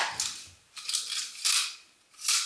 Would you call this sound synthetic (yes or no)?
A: no